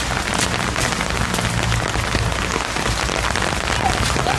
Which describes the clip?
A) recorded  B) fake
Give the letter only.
A